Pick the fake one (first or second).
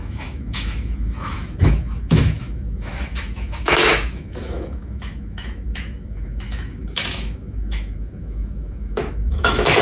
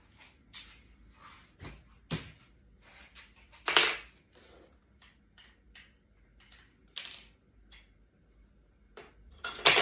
first